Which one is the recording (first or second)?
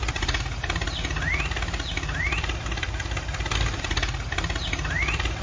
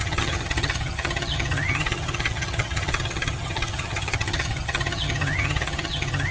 first